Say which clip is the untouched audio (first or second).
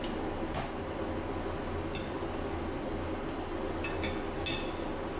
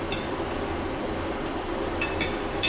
first